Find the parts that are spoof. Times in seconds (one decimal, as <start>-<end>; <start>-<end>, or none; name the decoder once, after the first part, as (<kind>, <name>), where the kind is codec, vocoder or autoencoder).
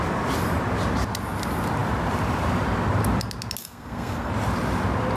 3.6-4.3 (codec, SNAC)